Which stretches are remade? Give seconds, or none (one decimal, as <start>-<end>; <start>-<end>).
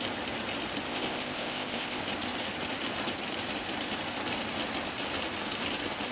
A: 0.9-2.0